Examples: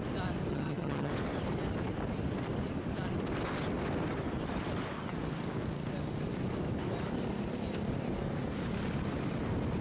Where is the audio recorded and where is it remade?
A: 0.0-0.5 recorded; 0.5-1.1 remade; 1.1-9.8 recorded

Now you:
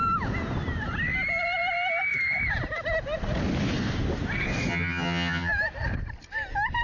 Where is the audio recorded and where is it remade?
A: 0.0-4.7 recorded; 4.7-5.5 remade; 5.5-6.8 recorded

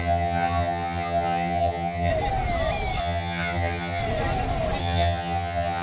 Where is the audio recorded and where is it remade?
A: 0.0-2.1 remade; 2.1-3.0 recorded; 3.0-4.0 remade; 4.0-4.8 recorded; 4.8-5.8 remade

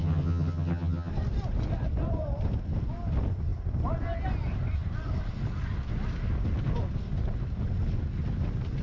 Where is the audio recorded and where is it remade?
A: 0.0-1.1 remade; 1.1-8.8 recorded

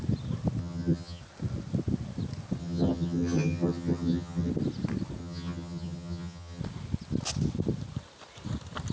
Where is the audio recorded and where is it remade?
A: 0.0-0.6 recorded; 0.6-1.2 remade; 1.2-2.6 recorded; 2.6-4.5 remade; 4.5-5.2 recorded; 5.2-6.6 remade; 6.6-8.9 recorded

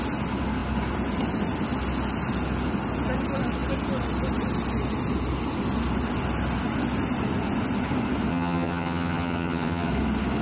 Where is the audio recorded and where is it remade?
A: 0.0-8.3 recorded; 8.3-9.9 remade; 9.9-10.4 recorded

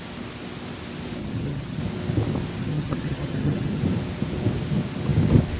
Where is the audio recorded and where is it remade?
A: 0.0-1.2 recorded; 1.2-1.8 remade; 1.8-2.6 recorded; 2.6-3.8 remade; 3.8-5.6 recorded

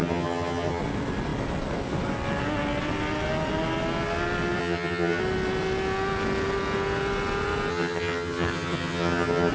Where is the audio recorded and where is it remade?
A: 0.0-0.8 remade; 0.8-4.6 recorded; 4.6-5.2 remade; 5.2-7.7 recorded; 7.7-9.5 remade